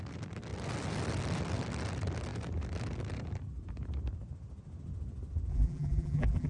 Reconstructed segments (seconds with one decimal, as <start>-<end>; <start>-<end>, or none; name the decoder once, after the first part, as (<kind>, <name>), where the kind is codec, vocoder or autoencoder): 5.5-6.5 (vocoder, BigVGAN v2)

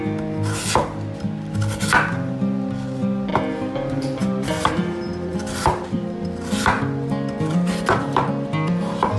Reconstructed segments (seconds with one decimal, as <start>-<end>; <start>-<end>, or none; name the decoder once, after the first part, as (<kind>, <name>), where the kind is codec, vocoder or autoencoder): 3.3-8.3 (vocoder, BigVGAN v2)